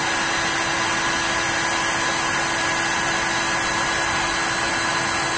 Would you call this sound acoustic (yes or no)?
yes